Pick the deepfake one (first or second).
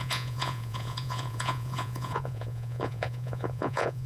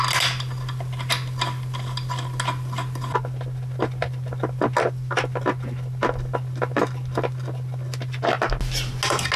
first